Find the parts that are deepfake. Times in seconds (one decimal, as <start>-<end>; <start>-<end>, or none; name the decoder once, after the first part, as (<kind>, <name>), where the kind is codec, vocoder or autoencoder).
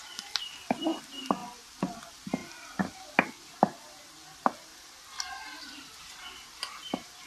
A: 0.0-1.4 (vocoder, BigVGAN v2); 2.0-2.4; 5.6-7.3